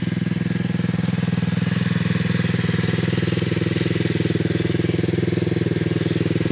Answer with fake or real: real